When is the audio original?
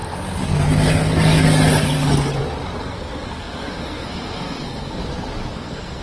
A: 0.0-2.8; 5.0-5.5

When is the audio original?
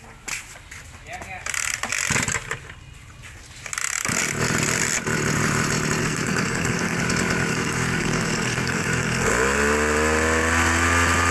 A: 0.0-6.0; 7.0-7.5; 9.3-11.3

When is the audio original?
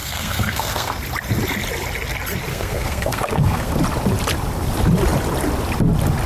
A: 1.0-2.5; 3.7-6.3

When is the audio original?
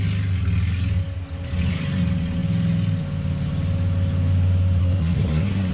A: 0.0-4.8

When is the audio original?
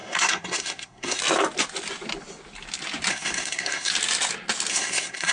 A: 1.2-3.1; 3.9-4.7